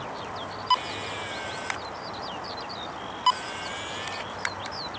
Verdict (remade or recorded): recorded